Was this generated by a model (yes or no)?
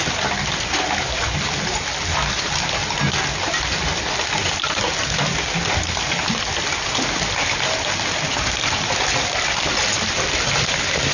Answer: no